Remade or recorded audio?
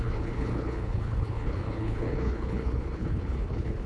remade